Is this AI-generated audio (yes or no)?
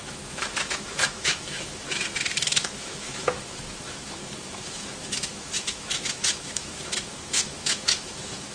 yes